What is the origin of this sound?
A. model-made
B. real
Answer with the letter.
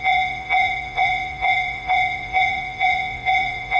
A